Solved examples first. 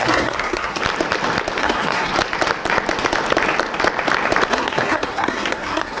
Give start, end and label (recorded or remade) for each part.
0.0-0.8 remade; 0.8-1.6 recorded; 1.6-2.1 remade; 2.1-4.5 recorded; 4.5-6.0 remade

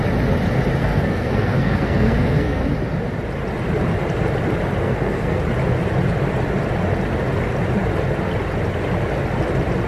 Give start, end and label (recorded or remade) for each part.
0.0-0.8 recorded; 0.8-2.6 remade; 2.6-4.8 recorded; 4.8-5.4 remade; 5.4-9.9 recorded

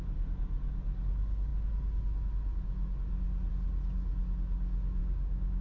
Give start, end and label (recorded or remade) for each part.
0.0-5.0 recorded; 5.0-5.6 remade

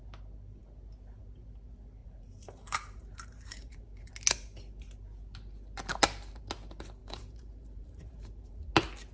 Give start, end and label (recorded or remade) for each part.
0.0-2.0 recorded; 2.0-4.1 remade; 4.1-7.0 recorded; 7.0-8.6 remade; 8.6-9.1 recorded